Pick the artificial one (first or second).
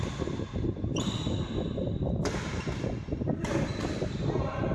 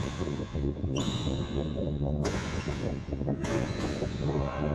second